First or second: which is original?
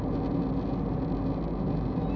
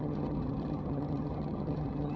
first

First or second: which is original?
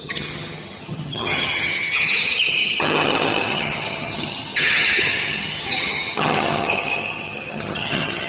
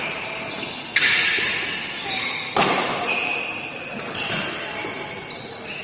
second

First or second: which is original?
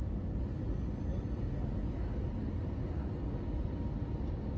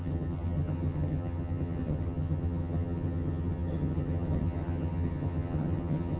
first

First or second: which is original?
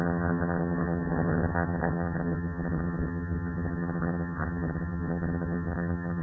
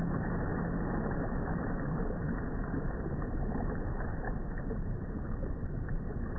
second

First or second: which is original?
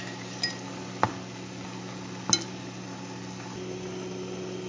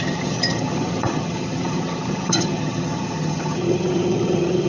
first